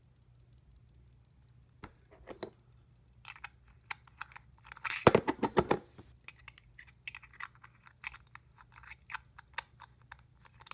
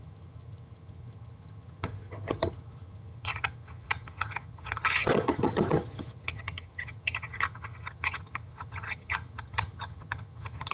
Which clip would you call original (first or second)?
first